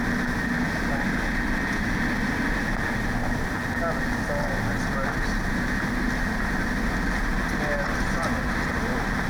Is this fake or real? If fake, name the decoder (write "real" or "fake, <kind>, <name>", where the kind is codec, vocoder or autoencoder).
real